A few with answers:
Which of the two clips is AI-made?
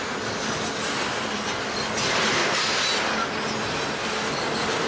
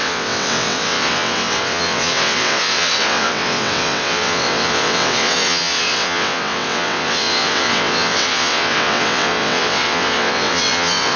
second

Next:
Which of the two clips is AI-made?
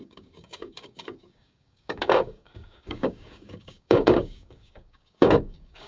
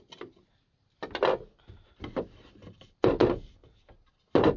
first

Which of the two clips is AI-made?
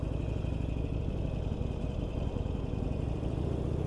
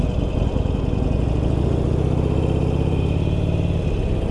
first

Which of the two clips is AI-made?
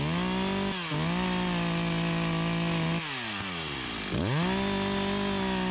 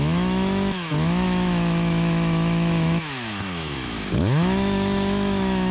second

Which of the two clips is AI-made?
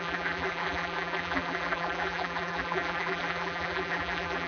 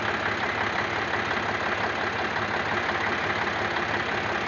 first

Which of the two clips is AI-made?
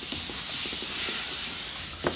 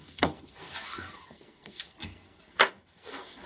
second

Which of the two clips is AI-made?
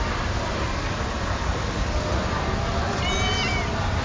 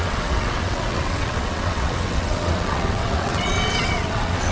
second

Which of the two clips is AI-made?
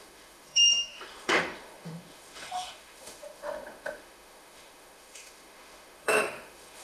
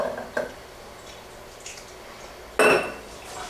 first